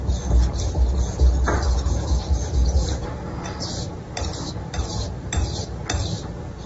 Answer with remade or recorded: recorded